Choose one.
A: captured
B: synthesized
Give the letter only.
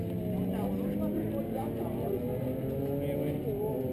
A